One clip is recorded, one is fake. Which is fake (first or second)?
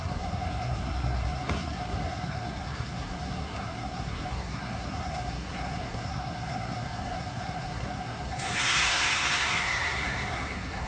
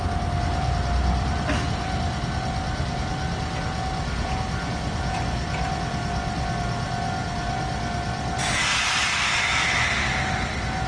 first